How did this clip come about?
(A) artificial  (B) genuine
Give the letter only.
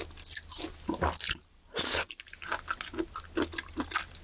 B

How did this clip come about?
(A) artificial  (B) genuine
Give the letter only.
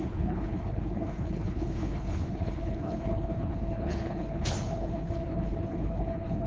A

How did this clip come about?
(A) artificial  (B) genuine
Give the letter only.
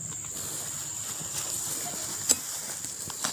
B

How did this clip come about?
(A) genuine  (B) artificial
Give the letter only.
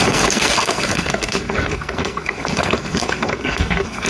B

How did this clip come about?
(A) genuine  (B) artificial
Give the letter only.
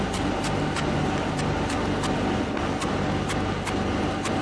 A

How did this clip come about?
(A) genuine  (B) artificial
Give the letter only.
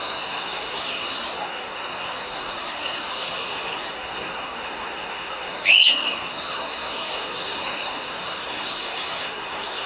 B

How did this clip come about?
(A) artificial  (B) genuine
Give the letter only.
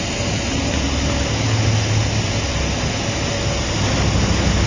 B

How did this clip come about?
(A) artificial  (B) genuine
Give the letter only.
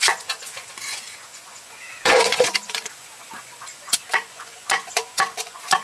A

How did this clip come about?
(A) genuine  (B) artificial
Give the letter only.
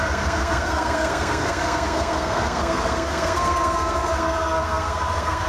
B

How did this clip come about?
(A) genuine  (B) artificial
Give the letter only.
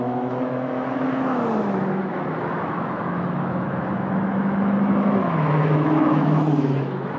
B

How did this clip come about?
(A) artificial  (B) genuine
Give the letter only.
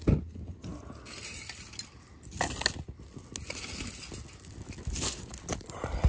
B